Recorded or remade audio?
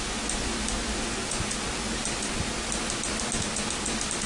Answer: recorded